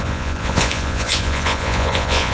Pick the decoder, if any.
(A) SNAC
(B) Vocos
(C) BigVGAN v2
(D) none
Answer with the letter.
B